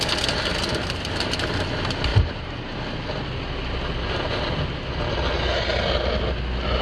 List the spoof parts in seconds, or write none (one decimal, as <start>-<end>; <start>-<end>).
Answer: 2.1-2.8